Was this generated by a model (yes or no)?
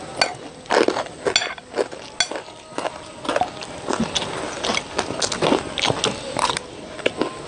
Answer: no